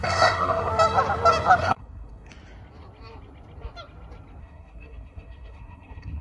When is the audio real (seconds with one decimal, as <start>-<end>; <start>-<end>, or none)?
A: 0.7-1.6; 2.3-4.4